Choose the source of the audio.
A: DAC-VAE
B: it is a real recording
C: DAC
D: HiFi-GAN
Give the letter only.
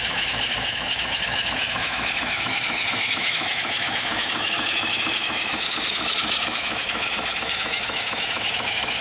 A